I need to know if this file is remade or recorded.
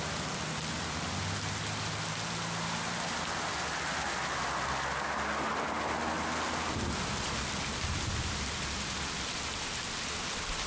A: recorded